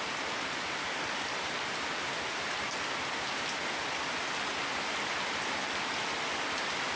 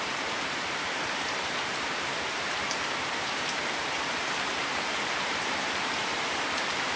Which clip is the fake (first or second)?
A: second